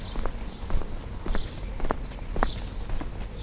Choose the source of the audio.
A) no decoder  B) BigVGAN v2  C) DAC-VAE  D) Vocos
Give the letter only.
A